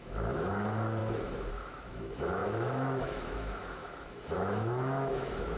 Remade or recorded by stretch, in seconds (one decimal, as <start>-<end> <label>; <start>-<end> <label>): 0.0-5.6 remade